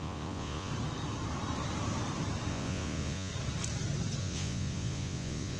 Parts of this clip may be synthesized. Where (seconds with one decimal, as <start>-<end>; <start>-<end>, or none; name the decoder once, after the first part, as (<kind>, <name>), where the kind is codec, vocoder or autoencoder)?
0.0-0.7 (vocoder, Vocos); 2.5-3.3; 4.2-5.6